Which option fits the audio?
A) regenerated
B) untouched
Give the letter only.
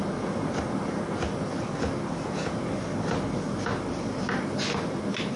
B